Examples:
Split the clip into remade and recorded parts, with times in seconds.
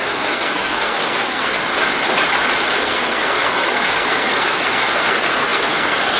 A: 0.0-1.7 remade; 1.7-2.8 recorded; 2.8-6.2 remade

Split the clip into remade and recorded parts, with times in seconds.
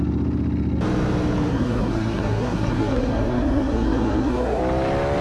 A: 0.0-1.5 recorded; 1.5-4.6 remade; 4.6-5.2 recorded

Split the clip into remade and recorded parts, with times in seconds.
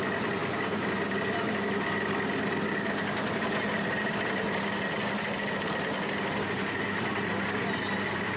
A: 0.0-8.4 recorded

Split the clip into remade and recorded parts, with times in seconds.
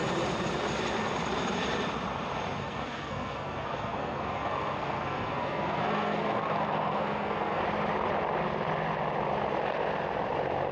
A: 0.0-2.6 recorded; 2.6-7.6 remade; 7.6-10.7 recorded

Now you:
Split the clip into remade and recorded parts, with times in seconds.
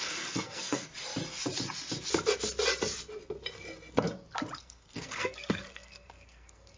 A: 0.0-0.9 remade; 0.9-4.6 recorded; 4.6-6.8 remade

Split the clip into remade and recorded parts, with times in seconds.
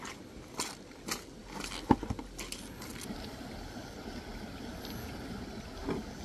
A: 0.0-6.2 recorded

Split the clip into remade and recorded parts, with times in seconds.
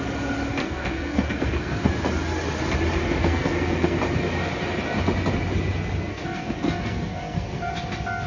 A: 0.0-0.6 recorded; 0.6-1.9 remade; 1.9-3.2 recorded; 3.2-4.0 remade; 4.0-6.1 recorded; 6.1-7.7 remade; 7.7-8.3 recorded